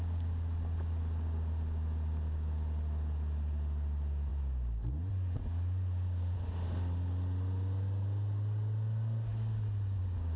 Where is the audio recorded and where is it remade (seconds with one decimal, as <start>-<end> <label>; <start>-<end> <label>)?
0.0-10.4 recorded